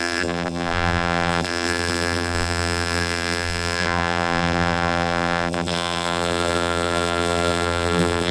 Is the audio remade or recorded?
remade